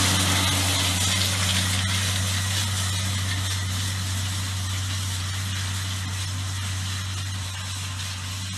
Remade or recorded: recorded